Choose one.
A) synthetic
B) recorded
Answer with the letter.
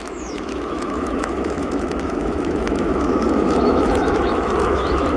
A